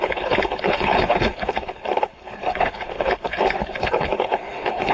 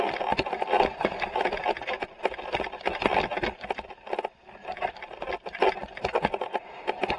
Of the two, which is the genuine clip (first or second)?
second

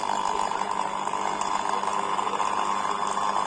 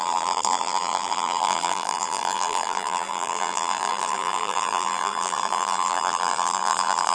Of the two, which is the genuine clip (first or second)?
first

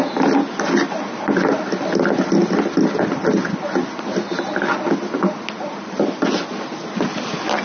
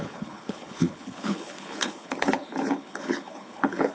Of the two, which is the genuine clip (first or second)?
first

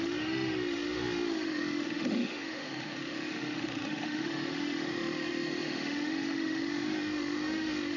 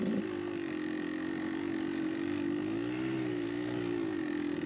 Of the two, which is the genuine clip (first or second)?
second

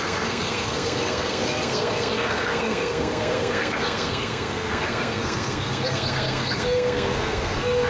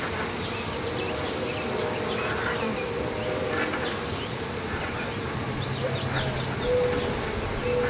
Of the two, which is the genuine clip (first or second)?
second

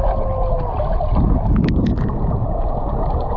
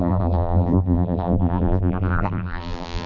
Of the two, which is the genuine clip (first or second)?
first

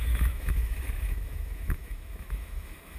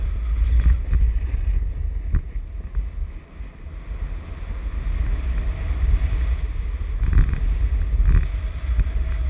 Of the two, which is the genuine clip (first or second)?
second